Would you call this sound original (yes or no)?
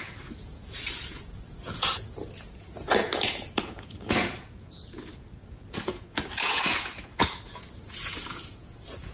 no